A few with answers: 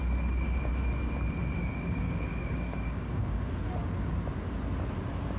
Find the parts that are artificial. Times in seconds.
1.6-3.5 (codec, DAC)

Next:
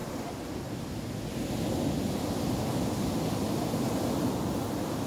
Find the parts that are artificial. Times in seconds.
none

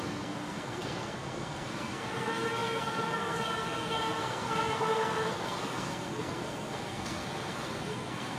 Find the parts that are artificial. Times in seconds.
0.0-8.4 (codec, SNAC)

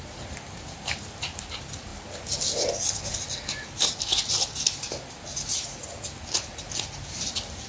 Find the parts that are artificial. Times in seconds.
none

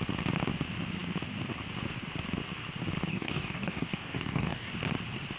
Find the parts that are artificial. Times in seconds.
3.1-4.7 (codec, DAC)

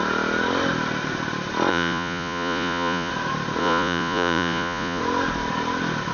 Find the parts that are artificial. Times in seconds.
1.7-3.1 (vocoder, Vocos); 3.6-5.0